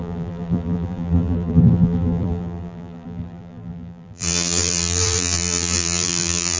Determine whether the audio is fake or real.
fake